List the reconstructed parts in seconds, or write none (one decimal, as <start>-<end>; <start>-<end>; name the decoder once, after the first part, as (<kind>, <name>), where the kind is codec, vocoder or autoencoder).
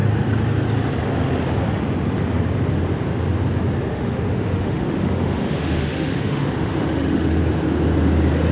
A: 3.9-7.4 (autoencoder, DAC-VAE)